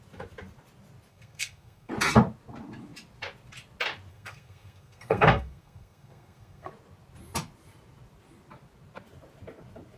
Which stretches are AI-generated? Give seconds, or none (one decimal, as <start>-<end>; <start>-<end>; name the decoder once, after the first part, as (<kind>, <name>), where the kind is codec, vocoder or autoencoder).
1.1-1.9 (codec, SNAC); 4.1-6.7